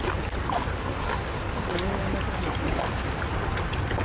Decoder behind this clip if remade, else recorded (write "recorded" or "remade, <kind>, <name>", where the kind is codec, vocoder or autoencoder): recorded